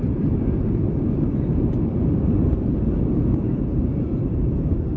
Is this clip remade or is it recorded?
remade